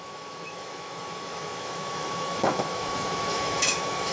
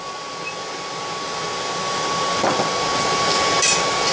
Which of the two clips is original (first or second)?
second